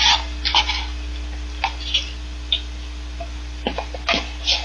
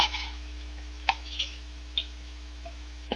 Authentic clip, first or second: first